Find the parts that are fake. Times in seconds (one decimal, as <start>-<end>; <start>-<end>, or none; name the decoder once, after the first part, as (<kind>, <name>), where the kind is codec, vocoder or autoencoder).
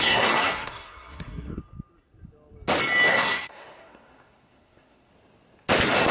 0.0-1.6 (codec, SNAC); 3.1-5.1